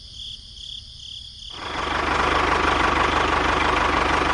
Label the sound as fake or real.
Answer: real